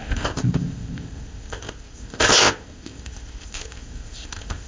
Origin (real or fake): fake